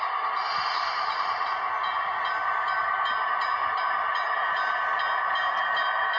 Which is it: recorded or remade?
recorded